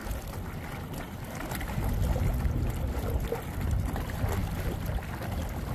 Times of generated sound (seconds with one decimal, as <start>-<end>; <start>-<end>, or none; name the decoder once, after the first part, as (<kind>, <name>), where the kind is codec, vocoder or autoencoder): none

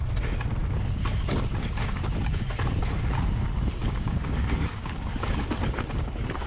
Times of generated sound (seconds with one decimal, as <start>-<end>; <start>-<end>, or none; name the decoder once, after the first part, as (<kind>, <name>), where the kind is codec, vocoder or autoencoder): 3.8-5.1 (codec, DAC)

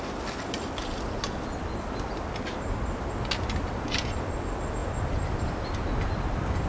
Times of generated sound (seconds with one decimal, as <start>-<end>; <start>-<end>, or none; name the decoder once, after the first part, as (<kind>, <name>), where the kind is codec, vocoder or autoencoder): none

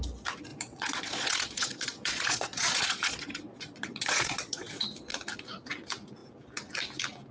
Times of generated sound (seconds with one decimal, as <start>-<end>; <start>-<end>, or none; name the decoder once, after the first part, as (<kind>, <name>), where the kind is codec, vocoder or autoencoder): 0.5-4.8 (vocoder, Vocos)

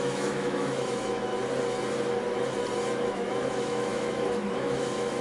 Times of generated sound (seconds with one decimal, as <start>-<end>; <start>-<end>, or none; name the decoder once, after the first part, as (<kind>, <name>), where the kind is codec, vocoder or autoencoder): 0.0-1.3 (autoencoder, DAC-VAE); 2.9-5.2

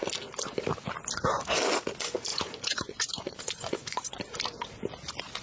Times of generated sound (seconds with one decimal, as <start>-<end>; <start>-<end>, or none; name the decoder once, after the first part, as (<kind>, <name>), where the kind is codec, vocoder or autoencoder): 2.3-4.2 (vocoder, Vocos)

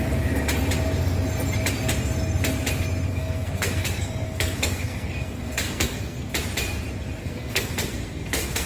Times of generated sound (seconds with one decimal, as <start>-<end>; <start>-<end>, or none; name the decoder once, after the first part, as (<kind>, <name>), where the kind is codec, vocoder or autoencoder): 3.1-6.3 (codec, SNAC); 7.2-8.7